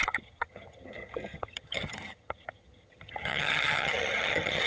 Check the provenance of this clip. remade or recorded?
remade